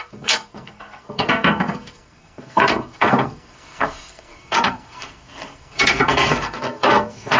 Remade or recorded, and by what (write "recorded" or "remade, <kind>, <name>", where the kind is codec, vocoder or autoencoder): remade, codec, SNAC